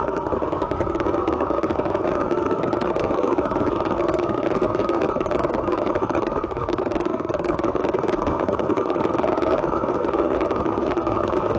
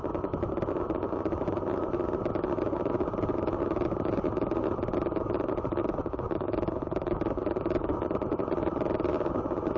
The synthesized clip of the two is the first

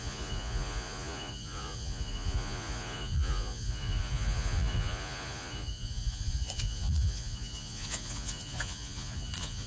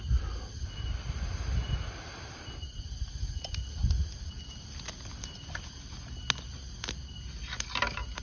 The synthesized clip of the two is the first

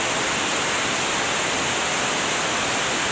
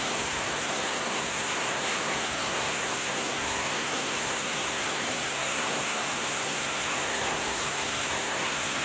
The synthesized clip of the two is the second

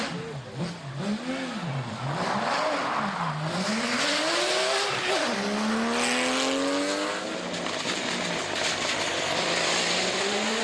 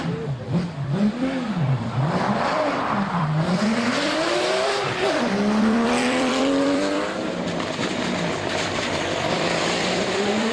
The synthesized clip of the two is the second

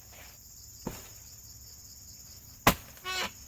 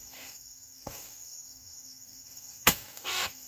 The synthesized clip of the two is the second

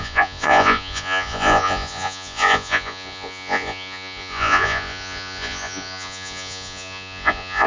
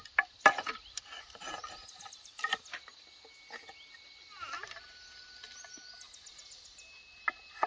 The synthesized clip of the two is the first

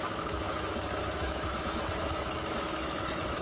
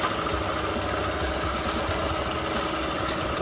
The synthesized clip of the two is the first